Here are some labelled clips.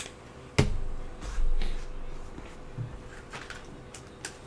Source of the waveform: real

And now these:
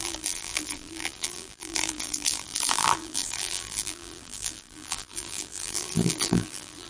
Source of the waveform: fake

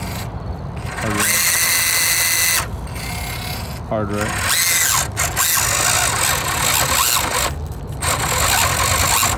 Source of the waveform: real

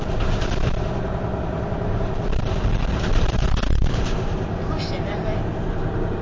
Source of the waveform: real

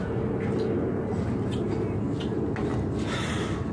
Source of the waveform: real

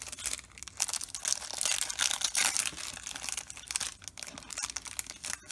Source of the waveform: real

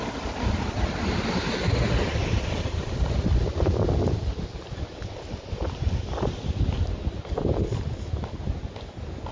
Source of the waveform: real